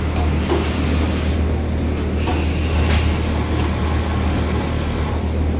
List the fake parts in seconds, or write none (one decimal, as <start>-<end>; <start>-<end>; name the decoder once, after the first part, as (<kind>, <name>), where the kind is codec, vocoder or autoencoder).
none